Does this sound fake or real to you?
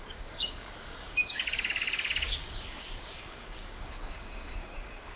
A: fake